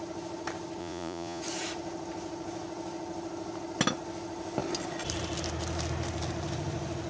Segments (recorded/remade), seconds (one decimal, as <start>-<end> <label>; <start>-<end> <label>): 0.0-0.8 recorded; 0.8-1.4 remade; 1.4-7.1 recorded